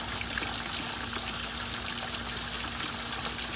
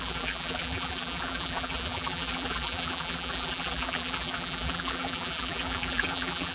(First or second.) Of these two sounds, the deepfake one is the second